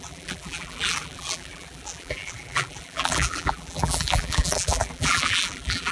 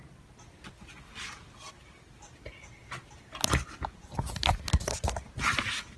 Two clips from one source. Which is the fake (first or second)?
first